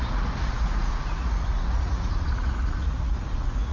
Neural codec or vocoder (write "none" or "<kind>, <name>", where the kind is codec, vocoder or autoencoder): vocoder, Vocos